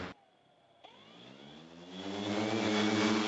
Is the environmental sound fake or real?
real